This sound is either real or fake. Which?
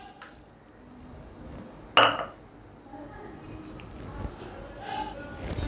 real